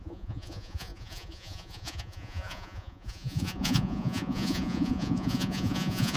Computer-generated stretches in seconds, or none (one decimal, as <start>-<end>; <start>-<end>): 0.0-6.2